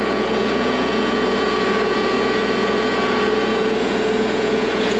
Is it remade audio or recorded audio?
remade